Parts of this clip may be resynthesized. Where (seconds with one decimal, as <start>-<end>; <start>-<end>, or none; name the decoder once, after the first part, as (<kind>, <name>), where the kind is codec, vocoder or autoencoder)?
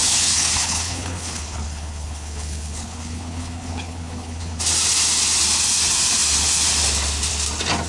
0.0-4.6 (codec, HILCodec)